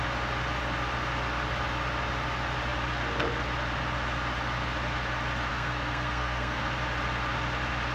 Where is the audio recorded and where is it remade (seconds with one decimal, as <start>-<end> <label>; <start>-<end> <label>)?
0.0-5.5 recorded; 5.5-6.6 remade; 6.6-7.9 recorded